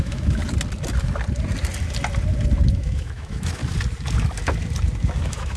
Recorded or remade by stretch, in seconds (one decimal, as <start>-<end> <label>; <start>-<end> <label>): 0.0-0.4 remade; 0.4-2.7 recorded; 2.7-3.6 remade; 3.6-5.0 recorded; 5.0-5.6 remade